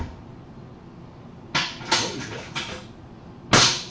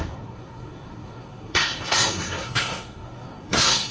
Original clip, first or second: first